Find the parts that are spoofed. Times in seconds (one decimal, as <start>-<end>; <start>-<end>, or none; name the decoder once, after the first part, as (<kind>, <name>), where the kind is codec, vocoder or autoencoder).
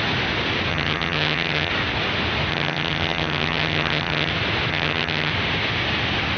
0.7-1.7 (vocoder, HiFi-GAN); 2.5-4.3; 4.7-5.3